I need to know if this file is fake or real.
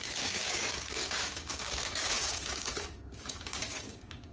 fake